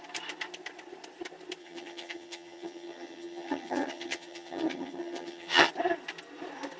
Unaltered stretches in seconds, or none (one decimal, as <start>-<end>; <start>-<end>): 0.0-1.6; 5.7-6.8